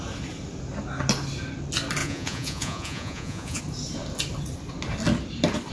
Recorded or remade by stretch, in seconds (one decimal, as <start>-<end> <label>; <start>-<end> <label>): 0.0-2.0 recorded; 2.0-3.6 remade; 3.6-5.7 recorded